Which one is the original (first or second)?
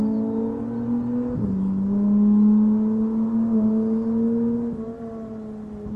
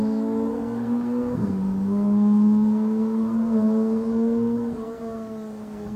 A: first